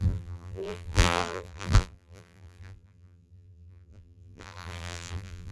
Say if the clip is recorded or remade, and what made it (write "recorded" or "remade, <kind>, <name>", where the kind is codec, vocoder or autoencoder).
remade, vocoder, BigVGAN v2